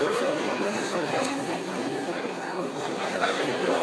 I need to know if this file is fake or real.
fake